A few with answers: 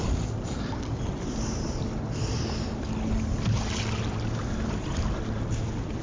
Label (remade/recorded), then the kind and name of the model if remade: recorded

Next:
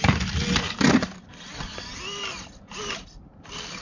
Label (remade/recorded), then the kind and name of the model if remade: recorded